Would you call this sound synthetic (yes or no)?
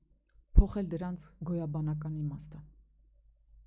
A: no